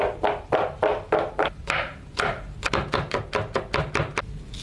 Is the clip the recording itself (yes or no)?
yes